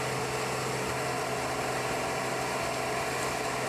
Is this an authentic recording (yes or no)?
yes